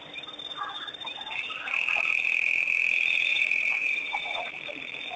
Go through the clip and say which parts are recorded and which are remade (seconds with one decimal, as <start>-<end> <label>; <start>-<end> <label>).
0.0-3.3 recorded; 3.3-4.5 remade; 4.5-5.2 recorded